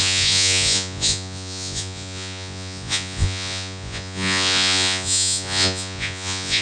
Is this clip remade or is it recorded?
remade